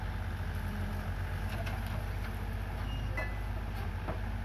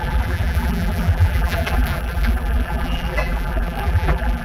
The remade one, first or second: second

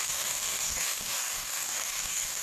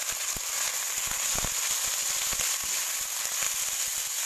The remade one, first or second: first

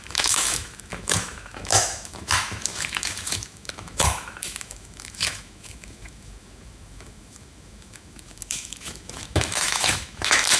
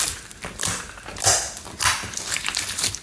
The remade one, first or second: first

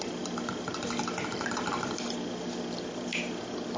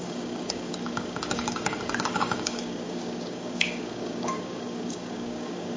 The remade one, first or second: second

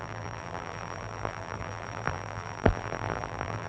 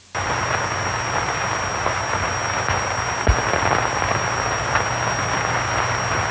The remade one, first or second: first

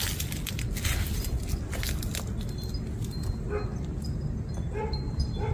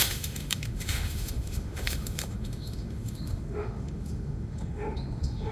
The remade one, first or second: second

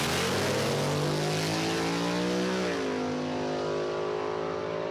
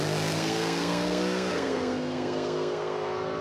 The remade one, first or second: second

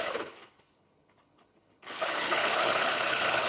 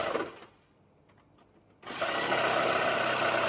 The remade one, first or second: first